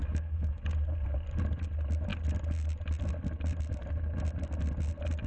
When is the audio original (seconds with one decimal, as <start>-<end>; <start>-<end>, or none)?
0.6-5.3